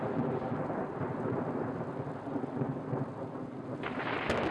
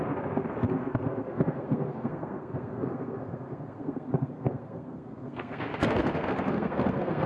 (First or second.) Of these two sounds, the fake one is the second